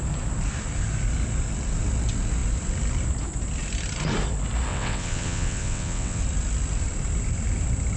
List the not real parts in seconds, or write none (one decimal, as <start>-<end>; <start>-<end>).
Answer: 4.7-6.2